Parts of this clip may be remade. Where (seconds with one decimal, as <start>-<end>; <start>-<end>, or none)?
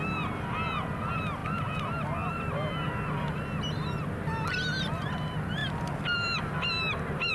none